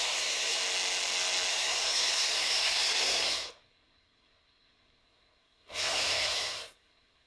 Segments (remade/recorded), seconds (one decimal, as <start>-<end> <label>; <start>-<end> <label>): 0.0-0.6 remade; 0.6-1.5 recorded; 1.5-7.3 remade